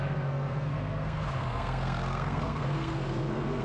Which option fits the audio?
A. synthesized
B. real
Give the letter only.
A